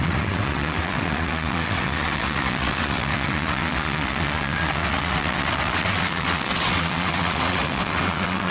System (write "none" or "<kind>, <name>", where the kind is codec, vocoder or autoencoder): vocoder, WaveNeXt